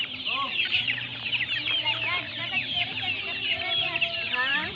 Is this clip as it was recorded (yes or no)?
no